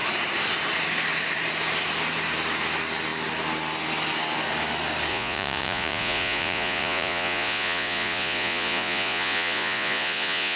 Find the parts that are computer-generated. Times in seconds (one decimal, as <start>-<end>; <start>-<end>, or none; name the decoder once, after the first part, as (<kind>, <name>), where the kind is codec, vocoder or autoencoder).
5.1-10.6 (vocoder, Vocos)